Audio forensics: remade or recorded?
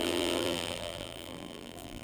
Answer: remade